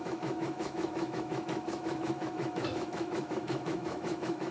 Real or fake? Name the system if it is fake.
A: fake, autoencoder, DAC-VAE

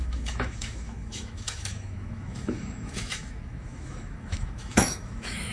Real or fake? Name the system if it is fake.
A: fake, autoencoder, DAC-VAE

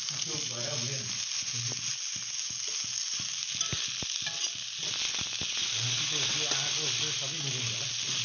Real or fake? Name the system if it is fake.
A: real